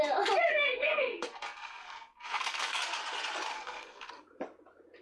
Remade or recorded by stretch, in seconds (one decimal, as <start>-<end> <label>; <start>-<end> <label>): 0.0-0.5 recorded; 0.5-2.8 remade; 2.8-3.5 recorded; 3.5-4.1 remade; 4.1-5.0 recorded